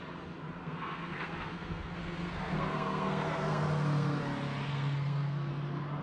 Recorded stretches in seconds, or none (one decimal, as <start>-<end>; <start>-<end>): 0.0-0.6; 4.2-4.7; 5.5-6.0